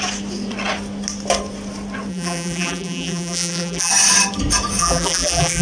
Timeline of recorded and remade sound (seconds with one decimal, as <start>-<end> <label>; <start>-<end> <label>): 0.0-2.1 recorded; 2.1-3.9 remade; 3.9-4.8 recorded; 4.8-5.6 remade